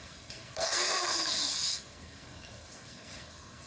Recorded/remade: remade